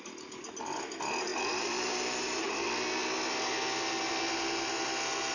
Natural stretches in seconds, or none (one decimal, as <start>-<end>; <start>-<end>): 0.0-1.3; 2.5-5.3